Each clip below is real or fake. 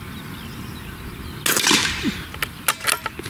real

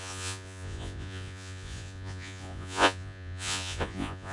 fake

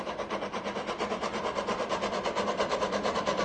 real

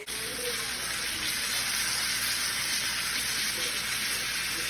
real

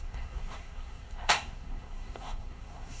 fake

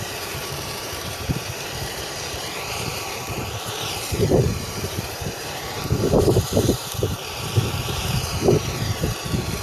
fake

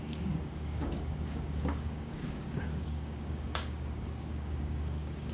fake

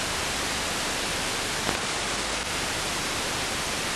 real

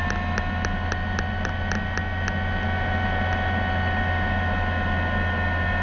real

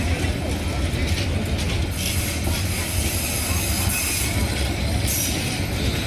real